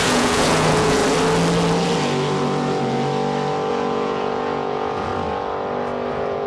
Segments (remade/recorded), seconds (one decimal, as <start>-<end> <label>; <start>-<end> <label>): 0.0-1.0 remade; 1.0-3.7 recorded; 3.7-5.1 remade; 5.1-6.1 recorded; 6.1-6.5 remade